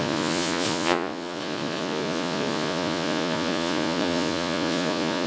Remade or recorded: remade